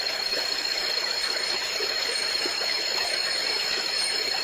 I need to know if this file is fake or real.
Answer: fake